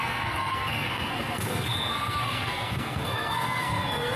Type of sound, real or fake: fake